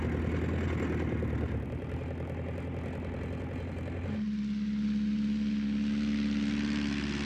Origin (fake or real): real